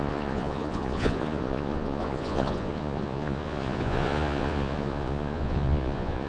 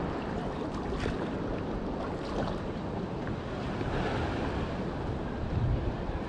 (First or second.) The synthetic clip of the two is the first